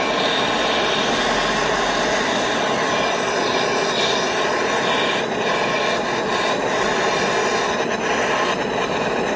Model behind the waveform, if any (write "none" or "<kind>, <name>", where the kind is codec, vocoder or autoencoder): none